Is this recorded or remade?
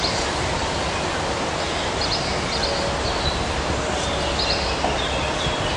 recorded